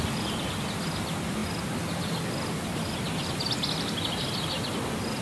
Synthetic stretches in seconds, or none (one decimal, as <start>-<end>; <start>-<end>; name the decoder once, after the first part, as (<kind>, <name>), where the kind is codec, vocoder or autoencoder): none